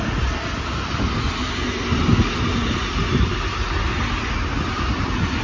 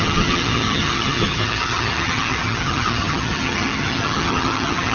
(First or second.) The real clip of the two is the first